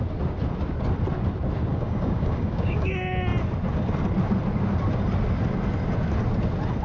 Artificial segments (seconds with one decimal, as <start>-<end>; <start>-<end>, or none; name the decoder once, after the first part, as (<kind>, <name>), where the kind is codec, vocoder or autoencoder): 1.7-2.9 (codec, DAC)